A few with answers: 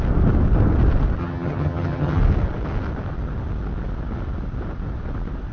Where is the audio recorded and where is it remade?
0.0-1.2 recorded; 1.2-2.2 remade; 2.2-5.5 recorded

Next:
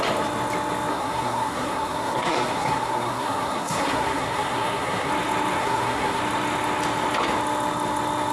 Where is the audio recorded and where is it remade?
0.0-0.9 recorded; 0.9-5.1 remade; 5.1-5.6 recorded; 5.6-6.2 remade; 6.2-8.3 recorded

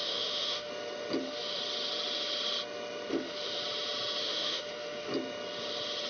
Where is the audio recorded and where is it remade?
0.0-0.7 remade; 0.7-1.2 recorded; 1.2-1.6 remade; 1.6-3.1 recorded; 3.1-3.6 remade; 3.6-4.2 recorded; 4.2-5.1 remade; 5.1-6.1 recorded